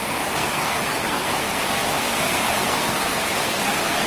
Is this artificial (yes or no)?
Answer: yes